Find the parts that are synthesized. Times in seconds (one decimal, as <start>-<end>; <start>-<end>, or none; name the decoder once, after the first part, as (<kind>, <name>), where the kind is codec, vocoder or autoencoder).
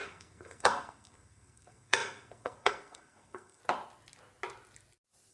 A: 0.0-3.6 (codec, SNAC)